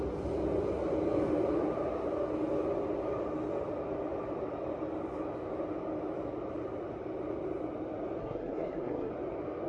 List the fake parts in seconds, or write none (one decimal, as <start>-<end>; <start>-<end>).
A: 8.2-9.1